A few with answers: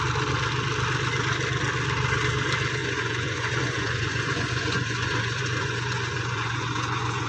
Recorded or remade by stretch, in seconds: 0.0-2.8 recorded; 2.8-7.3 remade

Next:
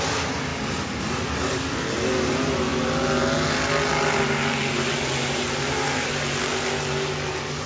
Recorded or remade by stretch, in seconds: 0.0-7.7 recorded

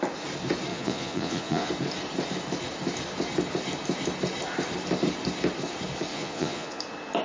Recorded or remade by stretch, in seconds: 0.0-0.7 recorded; 0.7-1.7 remade; 1.7-6.1 recorded; 6.1-6.8 remade; 6.8-7.2 recorded

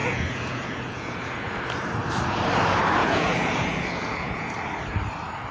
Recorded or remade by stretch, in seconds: 0.0-1.6 remade; 1.6-3.0 recorded; 3.0-4.5 remade; 4.5-5.5 recorded

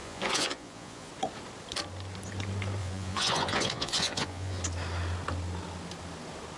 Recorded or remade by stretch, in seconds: 0.0-1.1 remade; 1.1-2.8 recorded; 2.8-4.6 remade; 4.6-6.6 recorded